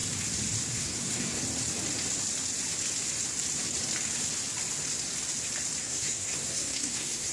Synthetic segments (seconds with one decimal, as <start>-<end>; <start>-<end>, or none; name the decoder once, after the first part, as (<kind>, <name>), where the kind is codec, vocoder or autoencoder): 0.7-1.4 (codec, SNAC); 5.8-7.3